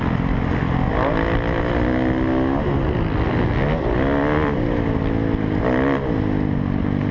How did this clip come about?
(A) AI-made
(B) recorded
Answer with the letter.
B